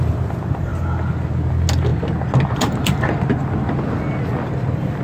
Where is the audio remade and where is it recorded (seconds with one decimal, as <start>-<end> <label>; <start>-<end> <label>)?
0.0-5.0 recorded